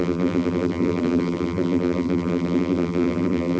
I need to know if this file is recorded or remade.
remade